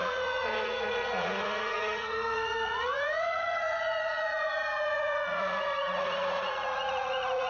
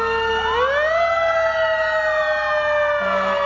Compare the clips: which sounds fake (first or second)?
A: first